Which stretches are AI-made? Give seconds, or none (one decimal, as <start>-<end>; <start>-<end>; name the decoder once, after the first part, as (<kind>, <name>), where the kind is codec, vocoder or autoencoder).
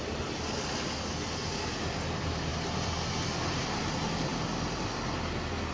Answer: 0.0-2.5 (vocoder, BigVGAN v2); 3.8-5.7